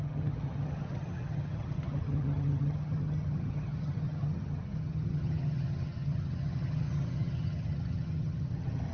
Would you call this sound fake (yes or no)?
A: yes